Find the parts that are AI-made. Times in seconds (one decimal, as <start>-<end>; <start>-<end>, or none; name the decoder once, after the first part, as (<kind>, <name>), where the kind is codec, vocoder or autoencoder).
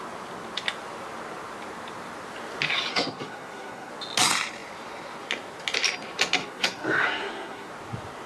2.9-3.9 (codec, SNAC); 6.4-7.7